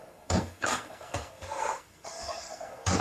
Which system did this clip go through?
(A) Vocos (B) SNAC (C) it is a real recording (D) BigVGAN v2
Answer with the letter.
B